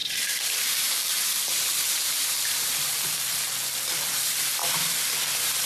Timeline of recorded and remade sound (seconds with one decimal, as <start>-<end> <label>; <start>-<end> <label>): 0.0-3.4 remade; 3.4-5.7 recorded